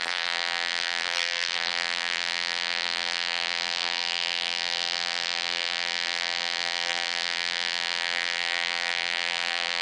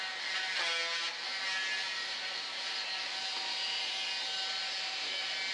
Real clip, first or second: second